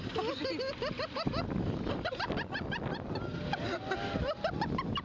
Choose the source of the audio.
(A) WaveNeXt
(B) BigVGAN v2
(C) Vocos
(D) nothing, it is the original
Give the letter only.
D